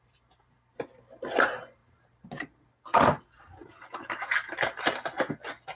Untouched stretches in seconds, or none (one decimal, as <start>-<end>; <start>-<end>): 0.0-5.7